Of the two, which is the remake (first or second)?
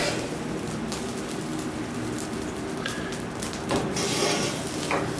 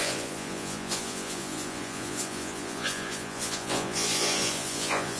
second